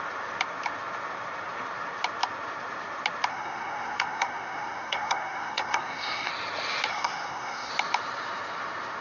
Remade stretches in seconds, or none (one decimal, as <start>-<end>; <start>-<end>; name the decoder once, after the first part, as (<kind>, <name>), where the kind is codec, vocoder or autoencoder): 3.3-6.3 (codec, SNAC); 6.9-7.7